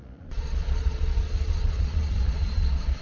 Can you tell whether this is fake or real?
fake